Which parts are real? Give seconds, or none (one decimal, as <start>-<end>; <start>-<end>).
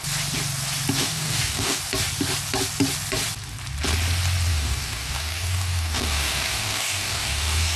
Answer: 0.0-1.0; 1.8-4.5